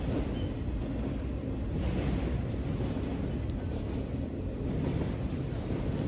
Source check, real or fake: real